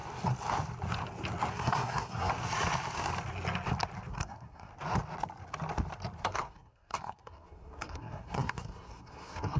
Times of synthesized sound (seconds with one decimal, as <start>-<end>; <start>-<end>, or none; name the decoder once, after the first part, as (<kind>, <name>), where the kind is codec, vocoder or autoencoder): 1.5-2.3 (codec, SNAC); 4.1-4.7; 6.2-9.6